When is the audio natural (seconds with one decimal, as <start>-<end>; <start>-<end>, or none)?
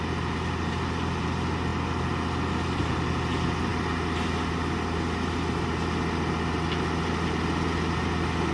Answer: 0.0-8.5